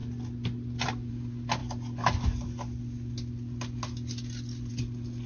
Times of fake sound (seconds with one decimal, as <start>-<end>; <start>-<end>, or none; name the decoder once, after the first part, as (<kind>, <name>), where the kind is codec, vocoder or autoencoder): none